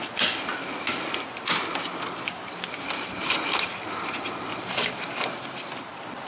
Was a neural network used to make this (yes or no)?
no